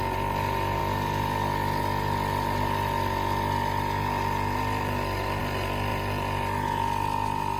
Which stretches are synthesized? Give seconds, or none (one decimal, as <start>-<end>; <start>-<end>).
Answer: none